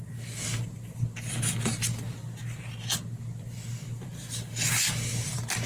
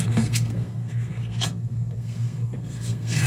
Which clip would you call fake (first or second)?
second